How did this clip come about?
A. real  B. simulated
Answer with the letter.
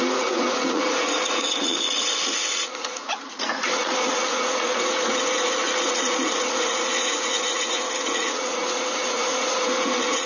B